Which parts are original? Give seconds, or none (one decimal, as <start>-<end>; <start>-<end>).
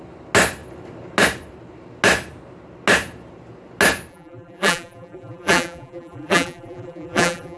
0.0-4.1